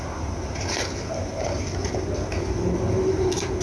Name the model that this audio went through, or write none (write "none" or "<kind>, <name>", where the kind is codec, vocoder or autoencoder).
none